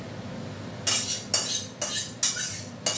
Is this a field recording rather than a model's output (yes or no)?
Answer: yes